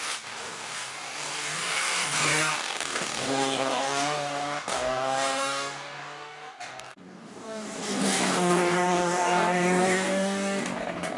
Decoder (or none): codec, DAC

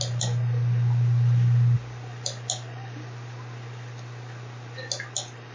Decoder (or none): none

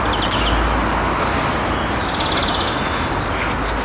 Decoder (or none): none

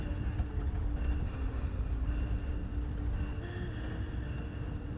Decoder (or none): none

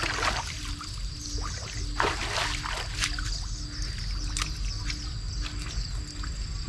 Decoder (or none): none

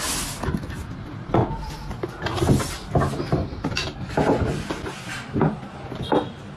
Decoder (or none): none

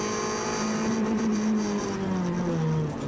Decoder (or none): none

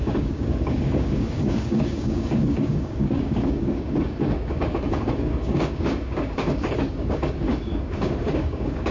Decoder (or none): codec, DAC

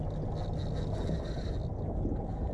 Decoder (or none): none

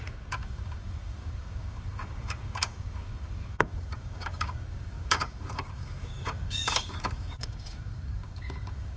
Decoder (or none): codec, DAC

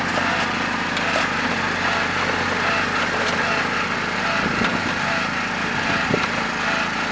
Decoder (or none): none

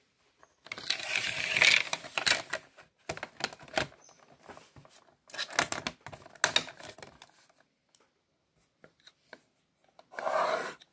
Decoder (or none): none